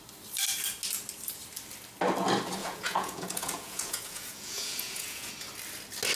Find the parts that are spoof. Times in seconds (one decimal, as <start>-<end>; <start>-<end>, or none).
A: 2.6-5.3